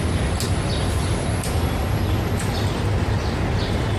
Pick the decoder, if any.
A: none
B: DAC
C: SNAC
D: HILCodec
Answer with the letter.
A